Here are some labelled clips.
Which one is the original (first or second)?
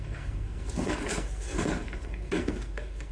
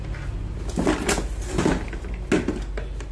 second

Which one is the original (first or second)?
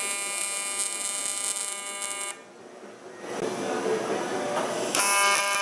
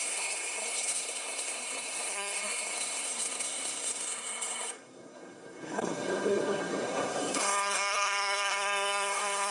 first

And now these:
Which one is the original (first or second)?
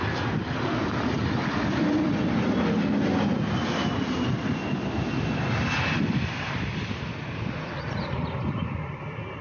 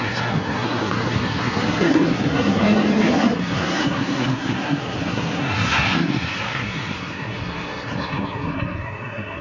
first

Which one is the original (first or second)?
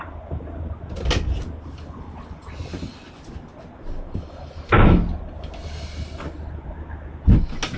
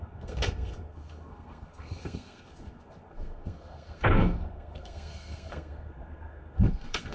first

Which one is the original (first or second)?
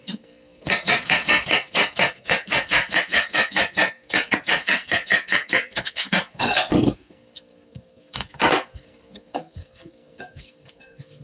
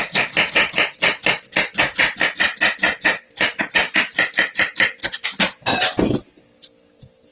second